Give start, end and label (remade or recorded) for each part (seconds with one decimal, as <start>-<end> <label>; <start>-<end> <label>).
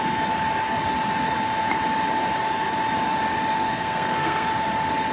0.0-3.5 recorded; 3.5-4.5 remade; 4.5-5.1 recorded